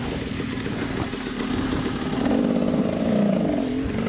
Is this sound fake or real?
real